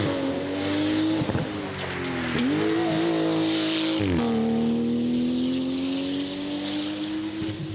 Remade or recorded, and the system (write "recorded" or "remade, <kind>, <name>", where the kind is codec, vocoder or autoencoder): recorded